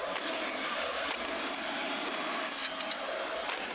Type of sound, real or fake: real